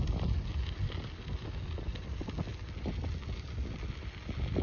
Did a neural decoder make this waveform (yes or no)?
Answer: no